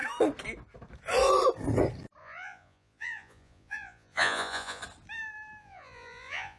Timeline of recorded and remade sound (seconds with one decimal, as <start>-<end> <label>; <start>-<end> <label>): 0.0-2.2 recorded; 2.2-4.8 remade; 4.8-5.6 recorded; 5.6-6.6 remade